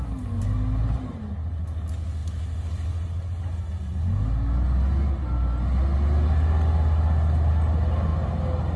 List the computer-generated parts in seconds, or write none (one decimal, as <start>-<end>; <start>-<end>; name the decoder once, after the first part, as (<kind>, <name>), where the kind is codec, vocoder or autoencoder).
none